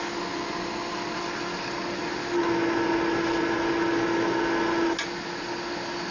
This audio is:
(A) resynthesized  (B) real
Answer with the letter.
B